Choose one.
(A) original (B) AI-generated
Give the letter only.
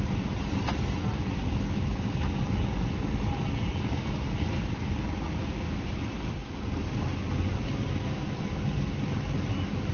A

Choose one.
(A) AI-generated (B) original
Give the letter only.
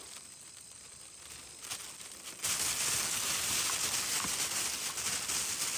B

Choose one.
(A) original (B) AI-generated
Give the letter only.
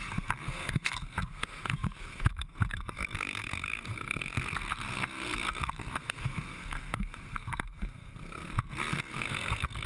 B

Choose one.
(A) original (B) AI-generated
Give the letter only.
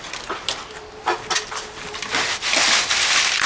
A